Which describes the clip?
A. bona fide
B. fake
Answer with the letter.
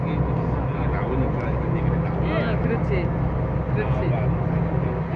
A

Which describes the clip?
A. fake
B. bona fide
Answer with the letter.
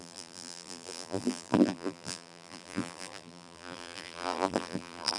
A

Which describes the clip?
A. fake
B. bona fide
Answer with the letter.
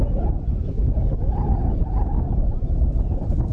B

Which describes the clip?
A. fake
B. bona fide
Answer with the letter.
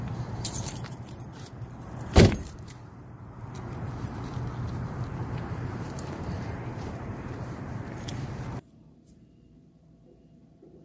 A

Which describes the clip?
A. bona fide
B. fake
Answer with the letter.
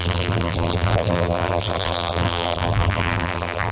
B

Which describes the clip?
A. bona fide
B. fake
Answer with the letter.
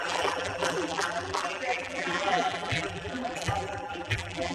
B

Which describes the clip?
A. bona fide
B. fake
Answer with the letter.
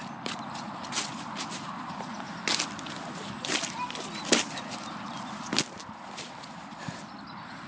A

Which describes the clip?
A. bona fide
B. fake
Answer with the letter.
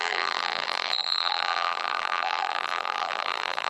B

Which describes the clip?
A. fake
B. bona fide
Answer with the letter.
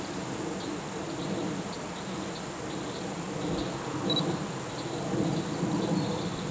B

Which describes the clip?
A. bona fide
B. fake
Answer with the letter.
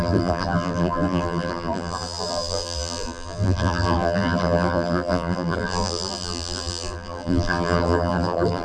B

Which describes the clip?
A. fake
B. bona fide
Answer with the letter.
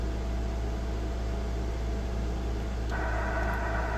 B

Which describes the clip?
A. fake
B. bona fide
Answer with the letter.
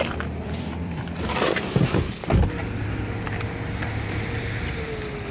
A